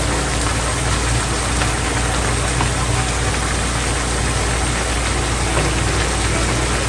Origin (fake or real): real